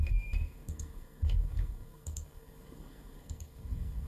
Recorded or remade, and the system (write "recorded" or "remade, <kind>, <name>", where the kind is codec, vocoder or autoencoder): remade, codec, SNAC